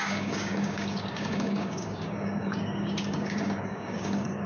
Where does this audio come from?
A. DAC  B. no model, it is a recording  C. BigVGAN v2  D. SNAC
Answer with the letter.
A